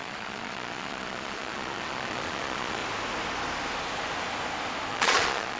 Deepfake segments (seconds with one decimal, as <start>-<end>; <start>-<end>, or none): 0.0-2.8; 4.9-5.6